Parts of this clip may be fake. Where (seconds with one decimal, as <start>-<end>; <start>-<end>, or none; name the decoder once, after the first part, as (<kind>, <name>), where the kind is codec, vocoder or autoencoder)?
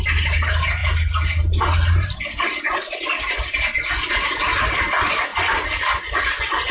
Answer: none